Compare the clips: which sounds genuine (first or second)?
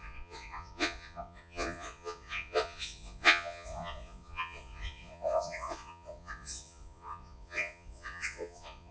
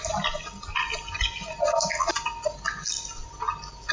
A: second